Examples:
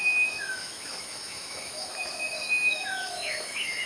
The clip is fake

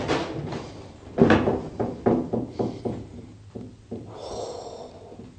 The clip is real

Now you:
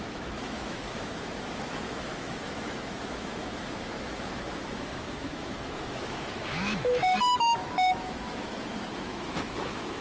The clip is fake